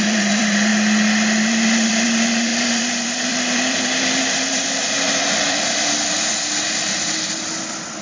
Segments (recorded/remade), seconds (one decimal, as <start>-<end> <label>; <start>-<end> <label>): 0.0-0.7 remade; 0.7-1.5 recorded; 1.5-8.0 remade